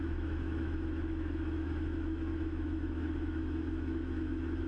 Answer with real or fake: fake